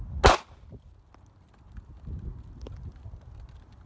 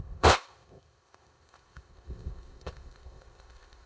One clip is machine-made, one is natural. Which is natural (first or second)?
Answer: first